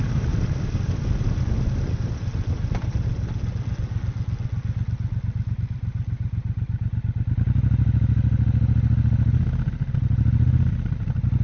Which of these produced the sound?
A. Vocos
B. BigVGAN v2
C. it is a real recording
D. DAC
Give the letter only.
C